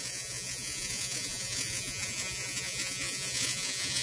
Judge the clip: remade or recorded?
remade